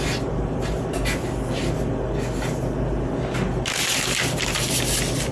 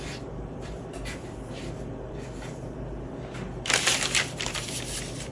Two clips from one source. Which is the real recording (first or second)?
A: first